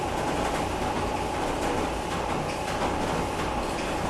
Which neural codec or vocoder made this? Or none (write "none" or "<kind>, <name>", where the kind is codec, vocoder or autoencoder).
none